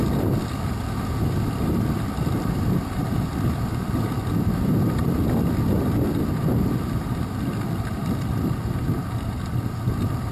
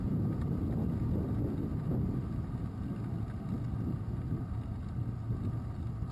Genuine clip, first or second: second